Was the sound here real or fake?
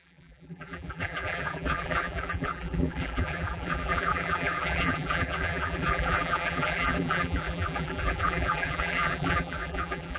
fake